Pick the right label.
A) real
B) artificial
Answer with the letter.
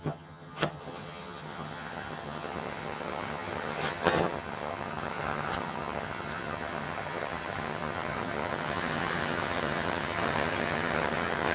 B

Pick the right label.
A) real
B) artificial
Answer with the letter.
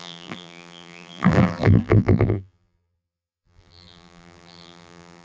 B